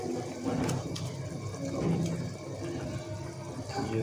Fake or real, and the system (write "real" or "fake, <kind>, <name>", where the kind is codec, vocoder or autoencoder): fake, vocoder, BigVGAN v2